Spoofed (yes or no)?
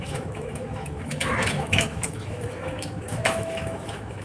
yes